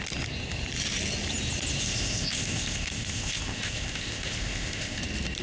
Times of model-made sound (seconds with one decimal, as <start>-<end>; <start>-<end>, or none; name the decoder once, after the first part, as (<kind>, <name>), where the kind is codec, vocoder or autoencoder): 1.8-5.0 (codec, ZipCodec)